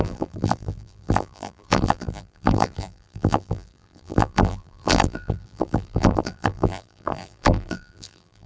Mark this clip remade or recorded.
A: remade